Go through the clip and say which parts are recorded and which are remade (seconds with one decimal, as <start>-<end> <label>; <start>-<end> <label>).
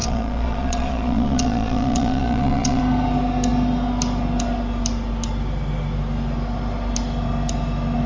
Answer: 0.0-2.8 remade; 2.8-8.1 recorded